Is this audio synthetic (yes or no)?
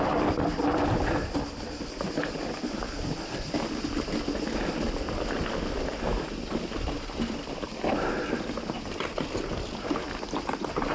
no